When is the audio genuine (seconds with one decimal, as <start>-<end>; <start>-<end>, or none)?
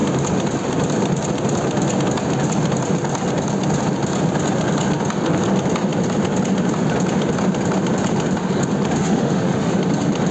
0.0-9.0; 9.7-10.3